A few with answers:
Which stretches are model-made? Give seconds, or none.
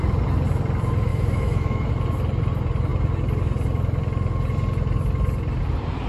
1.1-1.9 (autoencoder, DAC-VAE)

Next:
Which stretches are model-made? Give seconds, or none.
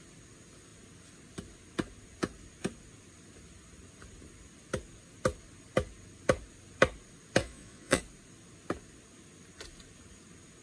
7.4-8.0 (vocoder, Vocos)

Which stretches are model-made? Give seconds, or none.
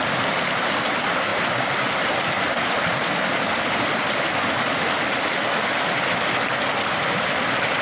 none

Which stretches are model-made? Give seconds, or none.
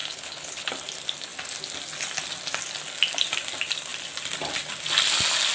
0.0-0.7 (codec, HILCodec)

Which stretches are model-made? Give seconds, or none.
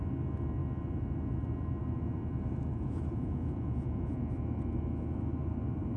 2.7-4.2 (vocoder, Vocos)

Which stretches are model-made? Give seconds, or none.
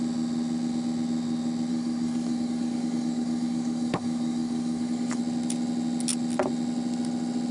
1.7-5.2 (codec, DAC)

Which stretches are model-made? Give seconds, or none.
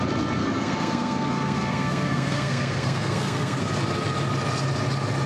0.4-3.6 (codec, SNAC)